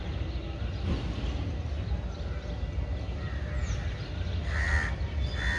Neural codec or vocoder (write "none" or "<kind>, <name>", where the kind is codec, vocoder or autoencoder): none